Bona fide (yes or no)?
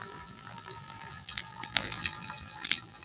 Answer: no